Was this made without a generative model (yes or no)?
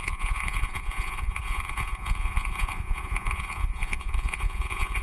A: no